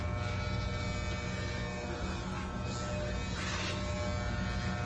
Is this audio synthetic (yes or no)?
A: no